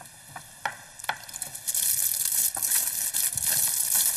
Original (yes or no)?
yes